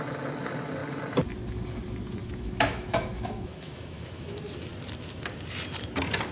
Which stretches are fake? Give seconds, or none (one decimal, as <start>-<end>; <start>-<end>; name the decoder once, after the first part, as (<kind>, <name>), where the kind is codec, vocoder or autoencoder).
2.2-4.5 (autoencoder, DAC-VAE)